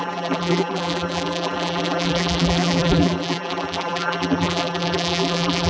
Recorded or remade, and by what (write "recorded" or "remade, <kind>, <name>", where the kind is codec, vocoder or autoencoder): remade, vocoder, BigVGAN v2